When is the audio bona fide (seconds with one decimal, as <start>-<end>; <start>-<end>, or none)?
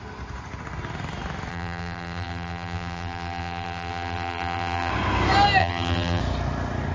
0.0-1.5; 4.9-5.6; 6.2-6.9